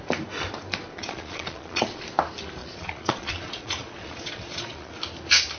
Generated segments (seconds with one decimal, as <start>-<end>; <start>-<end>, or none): 0.9-2.0; 2.6-4.9